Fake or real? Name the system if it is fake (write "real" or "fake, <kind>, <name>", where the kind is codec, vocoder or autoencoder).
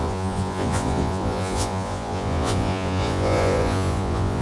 fake, vocoder, Vocos